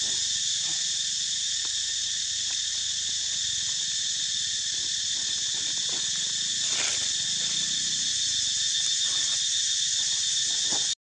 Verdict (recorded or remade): recorded